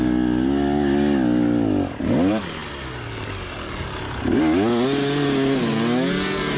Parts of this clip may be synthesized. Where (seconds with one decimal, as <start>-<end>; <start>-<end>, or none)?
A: none